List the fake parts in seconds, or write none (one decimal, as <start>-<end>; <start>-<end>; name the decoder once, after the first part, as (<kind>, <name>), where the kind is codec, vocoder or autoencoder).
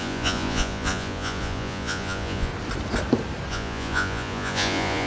0.0-2.5 (vocoder, Vocos); 3.5-5.1